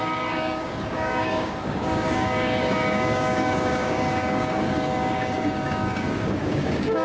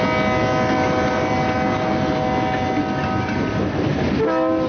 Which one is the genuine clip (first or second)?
second